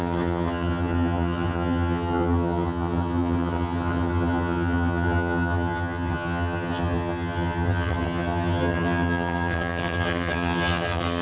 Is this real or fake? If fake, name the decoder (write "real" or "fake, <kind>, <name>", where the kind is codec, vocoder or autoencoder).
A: fake, vocoder, HiFi-GAN